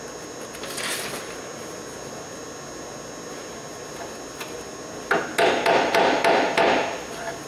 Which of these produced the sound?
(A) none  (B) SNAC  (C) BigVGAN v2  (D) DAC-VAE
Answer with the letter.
A